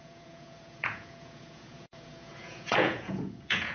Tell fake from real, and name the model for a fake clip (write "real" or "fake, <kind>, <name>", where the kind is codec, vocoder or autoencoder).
fake, vocoder, Vocos